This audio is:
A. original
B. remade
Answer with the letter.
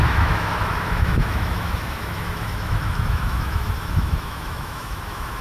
B